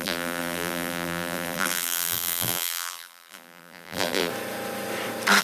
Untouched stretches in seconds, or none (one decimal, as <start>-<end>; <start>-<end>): 4.3-5.4